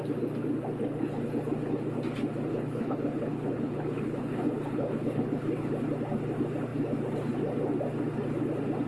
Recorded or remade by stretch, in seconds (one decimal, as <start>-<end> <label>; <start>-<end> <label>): 0.0-2.5 recorded; 2.5-5.7 remade; 5.7-8.9 recorded